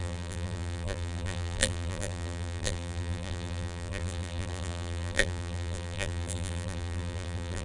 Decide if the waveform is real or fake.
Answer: fake